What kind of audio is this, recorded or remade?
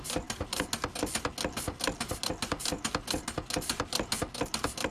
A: recorded